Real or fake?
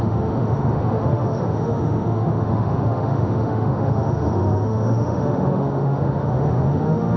fake